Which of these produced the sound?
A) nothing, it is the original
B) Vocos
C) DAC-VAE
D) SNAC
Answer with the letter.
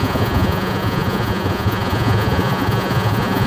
B